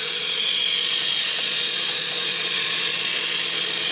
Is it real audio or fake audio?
fake